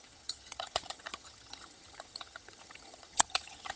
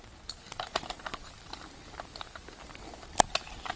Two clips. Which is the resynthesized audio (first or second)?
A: first